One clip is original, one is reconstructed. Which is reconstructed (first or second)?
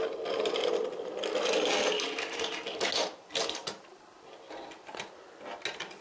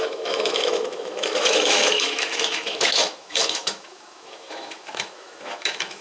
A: second